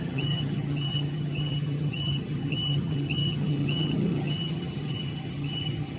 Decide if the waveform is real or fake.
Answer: fake